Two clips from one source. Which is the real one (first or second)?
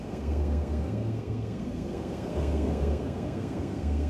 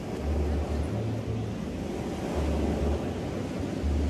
second